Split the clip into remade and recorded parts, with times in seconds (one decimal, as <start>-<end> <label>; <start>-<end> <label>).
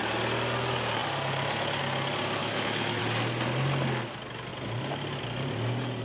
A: 0.0-2.4 recorded; 2.4-3.0 remade; 3.0-6.0 recorded